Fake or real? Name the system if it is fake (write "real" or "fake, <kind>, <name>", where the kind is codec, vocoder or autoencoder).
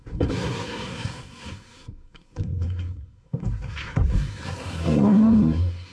fake, codec, SNAC